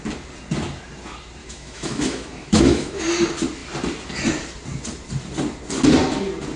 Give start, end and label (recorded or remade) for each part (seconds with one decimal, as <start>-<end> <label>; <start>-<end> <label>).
0.0-1.4 recorded; 1.4-3.0 remade; 3.0-6.6 recorded